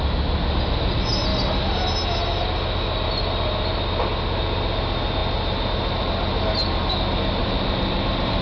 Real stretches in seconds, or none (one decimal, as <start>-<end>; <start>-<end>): 0.0-7.4

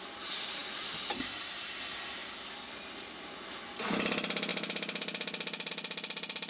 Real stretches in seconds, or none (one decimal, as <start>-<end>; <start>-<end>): 0.0-6.5

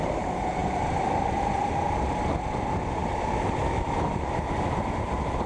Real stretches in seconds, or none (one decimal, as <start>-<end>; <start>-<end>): none

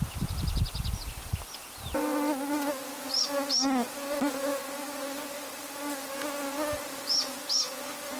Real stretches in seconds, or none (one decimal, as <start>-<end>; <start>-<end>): 0.0-8.2

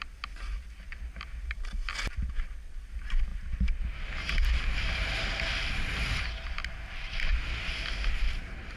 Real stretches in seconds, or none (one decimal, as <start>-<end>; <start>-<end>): 0.0-8.8

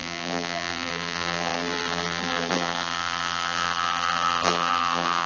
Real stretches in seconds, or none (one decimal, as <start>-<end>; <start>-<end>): none